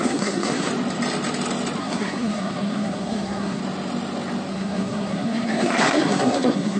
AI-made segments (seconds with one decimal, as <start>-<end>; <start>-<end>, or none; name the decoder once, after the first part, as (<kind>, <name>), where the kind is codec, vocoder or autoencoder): 0.0-0.7 (codec, SNAC); 1.8-3.6; 4.5-6.8